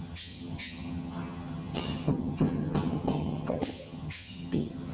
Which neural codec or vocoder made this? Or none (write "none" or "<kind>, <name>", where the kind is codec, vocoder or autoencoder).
vocoder, HiFi-GAN